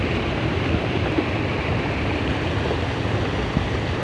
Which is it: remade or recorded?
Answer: recorded